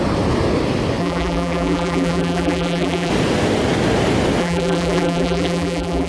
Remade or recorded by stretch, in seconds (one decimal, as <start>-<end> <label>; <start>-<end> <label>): 0.0-1.0 recorded; 1.0-3.1 remade; 3.1-4.4 recorded; 4.4-6.1 remade